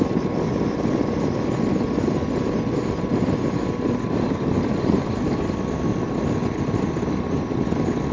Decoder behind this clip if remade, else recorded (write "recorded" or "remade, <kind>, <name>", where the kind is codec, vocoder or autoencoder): recorded